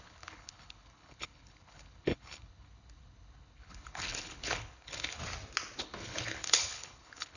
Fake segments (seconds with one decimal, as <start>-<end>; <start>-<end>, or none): 0.0-5.2; 5.8-7.4